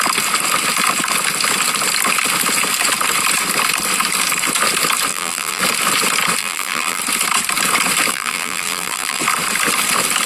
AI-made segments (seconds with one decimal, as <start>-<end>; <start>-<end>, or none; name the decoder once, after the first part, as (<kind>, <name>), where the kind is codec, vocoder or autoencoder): 5.1-5.6 (vocoder, BigVGAN v2); 6.4-7.0; 8.1-9.2